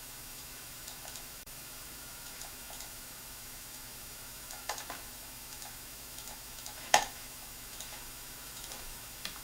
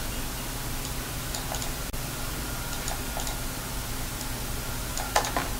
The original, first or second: second